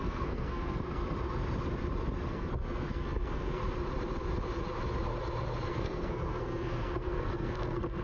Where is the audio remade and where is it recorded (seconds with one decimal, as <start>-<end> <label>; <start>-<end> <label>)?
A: 0.0-1.0 remade; 1.0-2.3 recorded; 2.3-3.6 remade; 3.6-5.7 recorded; 5.7-8.0 remade